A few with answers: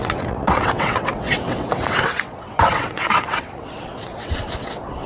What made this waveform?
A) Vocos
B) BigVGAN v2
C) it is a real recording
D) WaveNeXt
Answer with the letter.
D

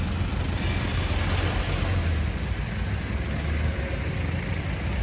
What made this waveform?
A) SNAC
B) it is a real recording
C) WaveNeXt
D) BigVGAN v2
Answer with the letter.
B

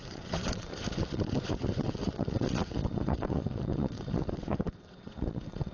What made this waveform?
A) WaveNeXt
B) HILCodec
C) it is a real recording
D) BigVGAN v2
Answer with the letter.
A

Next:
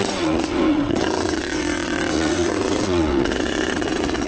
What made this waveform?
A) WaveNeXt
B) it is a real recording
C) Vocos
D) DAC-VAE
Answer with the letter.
A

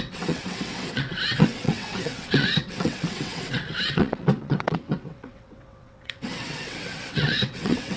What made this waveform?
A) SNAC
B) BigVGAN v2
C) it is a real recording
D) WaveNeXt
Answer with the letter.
D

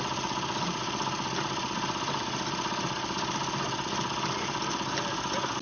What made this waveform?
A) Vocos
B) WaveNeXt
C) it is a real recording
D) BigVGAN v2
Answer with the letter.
C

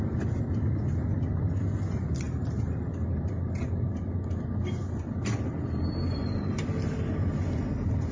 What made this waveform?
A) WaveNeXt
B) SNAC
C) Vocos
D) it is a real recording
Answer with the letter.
D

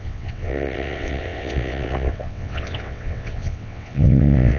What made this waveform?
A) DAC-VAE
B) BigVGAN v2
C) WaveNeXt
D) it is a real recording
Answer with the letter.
C